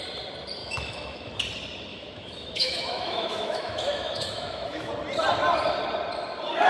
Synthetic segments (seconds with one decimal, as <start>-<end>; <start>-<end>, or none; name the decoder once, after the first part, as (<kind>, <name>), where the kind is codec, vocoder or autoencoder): 0.6-1.3 (autoencoder, DAC-VAE); 1.9-4.9